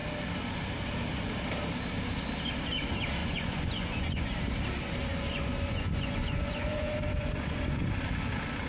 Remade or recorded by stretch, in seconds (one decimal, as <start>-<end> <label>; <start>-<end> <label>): 0.0-3.2 recorded; 3.2-4.4 remade; 4.4-5.0 recorded; 5.0-8.0 remade; 8.0-8.7 recorded